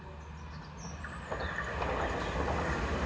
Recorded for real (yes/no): yes